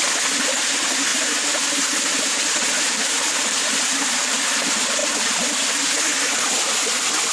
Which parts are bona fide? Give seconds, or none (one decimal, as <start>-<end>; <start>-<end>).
0.0-1.1; 3.4-5.0; 5.7-7.3